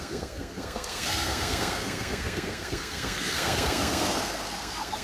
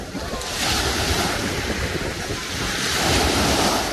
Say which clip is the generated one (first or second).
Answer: first